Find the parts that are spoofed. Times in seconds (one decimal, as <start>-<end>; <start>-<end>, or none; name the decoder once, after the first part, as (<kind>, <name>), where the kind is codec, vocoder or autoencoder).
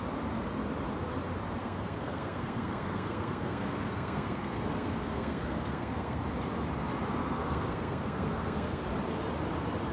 1.6-6.2 (codec, SNAC); 7.2-8.8